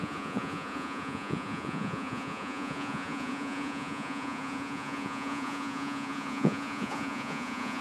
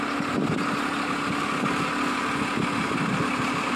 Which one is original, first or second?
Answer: second